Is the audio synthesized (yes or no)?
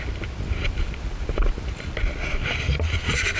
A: no